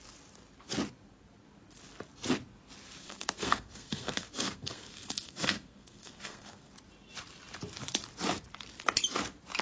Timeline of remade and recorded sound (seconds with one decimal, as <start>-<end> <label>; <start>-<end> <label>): 0.0-3.0 recorded; 3.0-6.7 remade; 6.7-9.6 recorded